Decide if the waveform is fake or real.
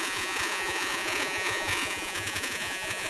fake